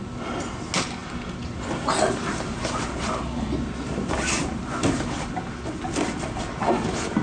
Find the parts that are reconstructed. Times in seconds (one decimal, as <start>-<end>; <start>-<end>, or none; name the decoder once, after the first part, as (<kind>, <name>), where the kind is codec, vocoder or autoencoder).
none

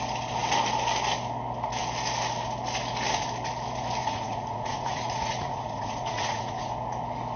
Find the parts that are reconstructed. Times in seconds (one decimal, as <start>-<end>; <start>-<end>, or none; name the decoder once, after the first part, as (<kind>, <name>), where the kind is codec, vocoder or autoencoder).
4.0-6.7 (vocoder, Vocos)

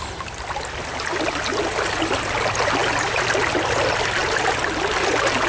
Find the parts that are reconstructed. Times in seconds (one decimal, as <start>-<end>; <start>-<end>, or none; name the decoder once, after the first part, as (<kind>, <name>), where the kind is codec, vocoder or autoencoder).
none

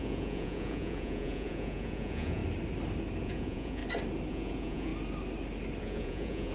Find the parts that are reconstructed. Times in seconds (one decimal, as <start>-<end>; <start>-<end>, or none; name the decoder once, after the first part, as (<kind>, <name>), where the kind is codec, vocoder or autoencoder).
0.0-2.4 (vocoder, Vocos); 3.2-3.8; 4.3-4.9; 5.8-6.5

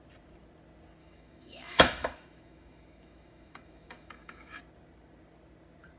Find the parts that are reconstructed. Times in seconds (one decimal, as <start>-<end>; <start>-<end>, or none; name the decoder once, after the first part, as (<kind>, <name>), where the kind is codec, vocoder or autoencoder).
1.0-4.6 (autoencoder, DAC-VAE)

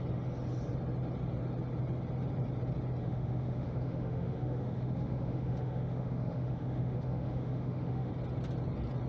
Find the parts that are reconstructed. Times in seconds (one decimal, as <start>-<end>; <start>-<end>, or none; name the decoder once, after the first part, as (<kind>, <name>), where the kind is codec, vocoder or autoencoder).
3.0-8.1 (autoencoder, DAC-VAE)

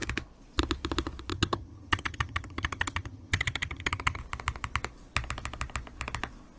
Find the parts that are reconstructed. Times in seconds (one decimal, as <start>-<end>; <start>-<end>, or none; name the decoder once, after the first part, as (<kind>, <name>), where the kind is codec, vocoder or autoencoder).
1.3-4.2 (vocoder, HiFi-GAN)